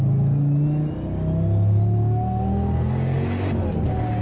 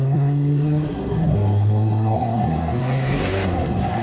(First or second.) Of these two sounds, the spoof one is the second